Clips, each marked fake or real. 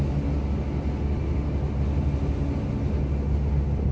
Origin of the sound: real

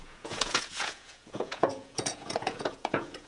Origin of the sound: fake